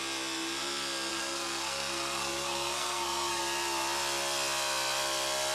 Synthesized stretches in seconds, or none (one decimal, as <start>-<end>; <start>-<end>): 1.1-3.4

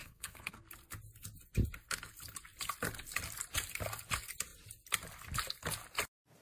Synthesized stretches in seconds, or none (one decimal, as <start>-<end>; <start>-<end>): 0.0-0.6

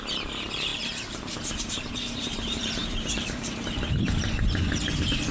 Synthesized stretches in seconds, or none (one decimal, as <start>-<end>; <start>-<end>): 0.0-5.3

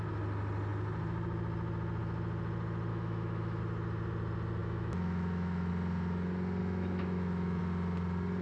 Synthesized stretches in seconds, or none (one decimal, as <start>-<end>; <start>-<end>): 2.9-3.6; 4.6-5.7; 6.6-7.6

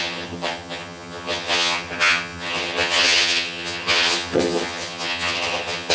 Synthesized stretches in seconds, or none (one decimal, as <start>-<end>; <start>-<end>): 0.0-5.9

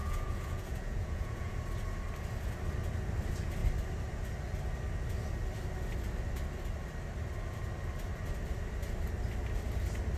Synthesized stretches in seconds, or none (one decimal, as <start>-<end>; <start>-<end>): 0.0-1.5